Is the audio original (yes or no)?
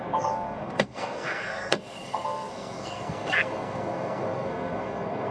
no